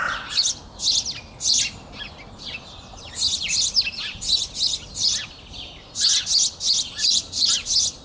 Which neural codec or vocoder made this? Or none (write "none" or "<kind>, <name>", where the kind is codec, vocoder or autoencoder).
none